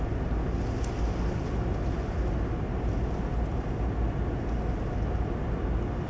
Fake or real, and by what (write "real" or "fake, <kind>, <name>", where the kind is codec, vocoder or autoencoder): real